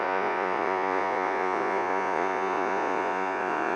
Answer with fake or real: fake